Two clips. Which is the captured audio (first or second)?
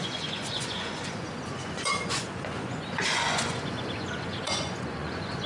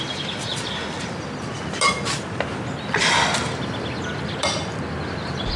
second